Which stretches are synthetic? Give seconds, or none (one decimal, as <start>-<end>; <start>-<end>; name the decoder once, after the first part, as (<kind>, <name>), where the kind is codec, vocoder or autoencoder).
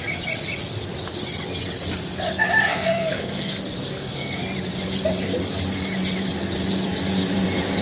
2.7-3.5 (codec, SNAC); 3.9-4.4